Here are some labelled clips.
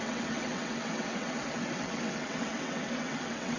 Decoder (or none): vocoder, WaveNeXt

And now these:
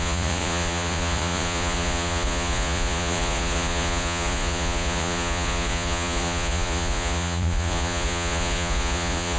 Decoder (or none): vocoder, Vocos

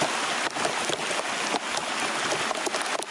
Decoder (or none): none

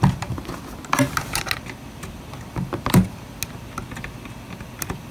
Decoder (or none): none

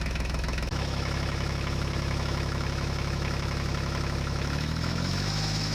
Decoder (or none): autoencoder, DAC-VAE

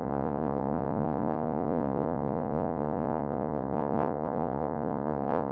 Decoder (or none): vocoder, Vocos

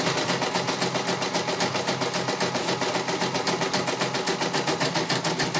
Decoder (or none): none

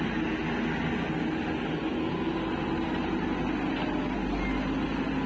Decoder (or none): none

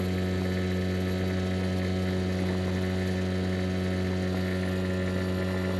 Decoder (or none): none